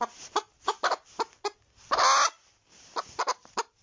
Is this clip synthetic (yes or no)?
no